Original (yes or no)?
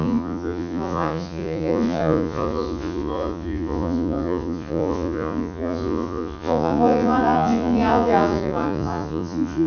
no